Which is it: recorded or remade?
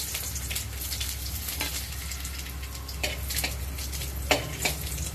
recorded